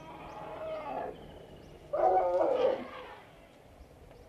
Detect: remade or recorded recorded